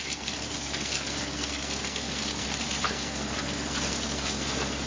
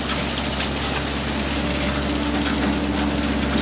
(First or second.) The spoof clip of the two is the first